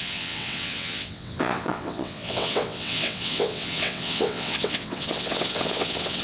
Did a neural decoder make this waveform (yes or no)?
yes